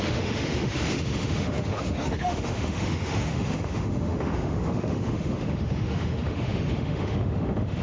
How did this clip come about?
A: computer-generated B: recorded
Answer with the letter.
A